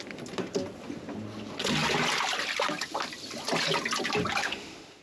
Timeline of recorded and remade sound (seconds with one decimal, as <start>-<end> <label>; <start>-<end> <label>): 0.0-4.4 recorded; 4.4-5.0 remade